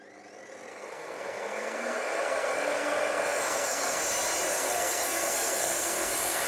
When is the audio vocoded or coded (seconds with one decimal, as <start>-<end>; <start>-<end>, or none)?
0.7-4.0; 4.5-6.5